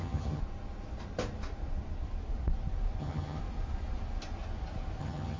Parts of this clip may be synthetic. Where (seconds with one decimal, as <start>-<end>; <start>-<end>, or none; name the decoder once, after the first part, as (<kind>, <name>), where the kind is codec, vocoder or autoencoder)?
0.0-0.4 (vocoder, HiFi-GAN); 3.0-3.4; 5.0-5.4